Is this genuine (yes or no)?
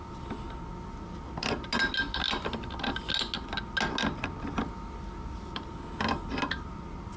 yes